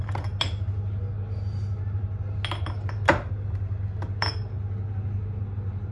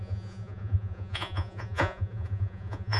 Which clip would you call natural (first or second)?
first